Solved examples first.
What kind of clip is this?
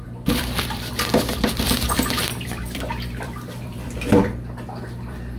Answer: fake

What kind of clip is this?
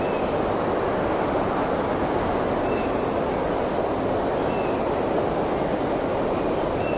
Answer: real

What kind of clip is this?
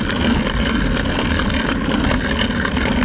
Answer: real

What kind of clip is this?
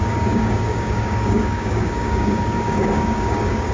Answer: fake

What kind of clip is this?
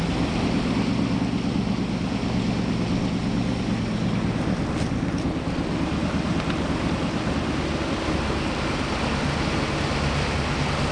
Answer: real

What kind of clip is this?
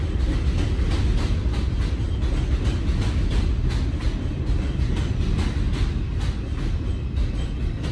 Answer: real